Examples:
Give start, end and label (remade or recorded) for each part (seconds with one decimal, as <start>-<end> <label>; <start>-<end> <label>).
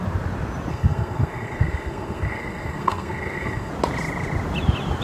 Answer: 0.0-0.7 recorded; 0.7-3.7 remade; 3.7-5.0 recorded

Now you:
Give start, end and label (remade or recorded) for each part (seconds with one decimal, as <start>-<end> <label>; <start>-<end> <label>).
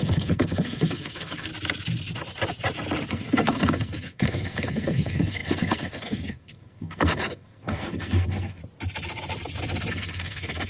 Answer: 0.0-1.5 remade; 1.5-3.1 recorded; 3.1-8.6 remade; 8.6-9.9 recorded; 9.9-10.7 remade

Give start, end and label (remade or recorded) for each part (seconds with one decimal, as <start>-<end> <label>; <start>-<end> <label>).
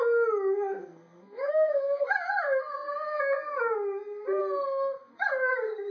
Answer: 0.0-0.8 recorded; 0.8-2.1 remade; 2.1-5.9 recorded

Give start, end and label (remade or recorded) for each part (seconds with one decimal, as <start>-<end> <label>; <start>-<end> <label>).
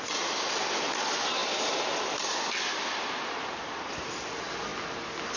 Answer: 0.0-5.4 recorded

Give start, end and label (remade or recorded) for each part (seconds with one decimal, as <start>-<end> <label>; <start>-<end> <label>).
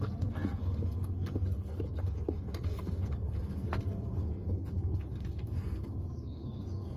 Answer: 0.0-7.0 remade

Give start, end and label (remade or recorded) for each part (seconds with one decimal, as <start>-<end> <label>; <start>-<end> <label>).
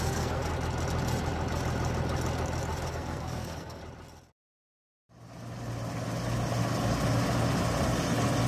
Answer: 0.0-0.5 remade; 0.5-2.9 recorded; 2.9-3.8 remade; 3.8-8.5 recorded